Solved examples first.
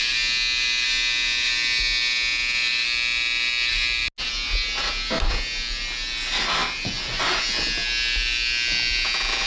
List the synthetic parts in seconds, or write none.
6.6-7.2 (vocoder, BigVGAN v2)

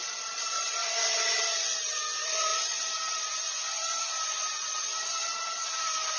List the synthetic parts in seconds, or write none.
0.0-6.2 (vocoder, BigVGAN v2)

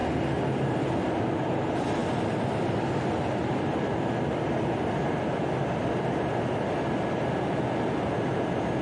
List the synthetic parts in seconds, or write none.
2.0-6.6 (vocoder, BigVGAN v2)

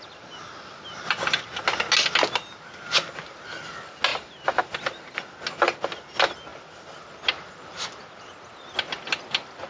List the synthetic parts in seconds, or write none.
4.1-4.6 (vocoder, BigVGAN v2)

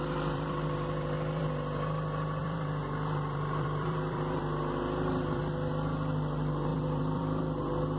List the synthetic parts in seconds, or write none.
0.0-1.5 (vocoder, BigVGAN v2); 2.4-5.4; 6.7-7.4

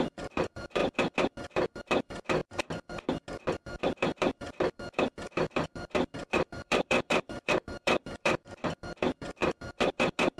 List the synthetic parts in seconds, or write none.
0.0-0.8 (vocoder, BigVGAN v2); 1.8-2.4; 3.8-9.4

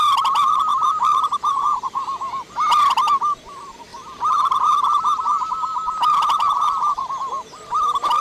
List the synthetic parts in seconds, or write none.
0.0-0.7 (vocoder, BigVGAN v2); 1.5-2.1; 2.9-3.9; 5.5-8.2